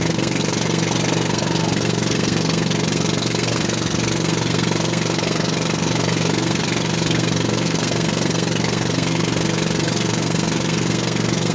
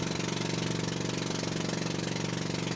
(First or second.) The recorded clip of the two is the second